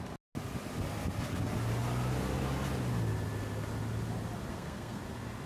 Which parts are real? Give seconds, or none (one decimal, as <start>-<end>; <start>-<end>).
0.0-4.5; 5.0-5.5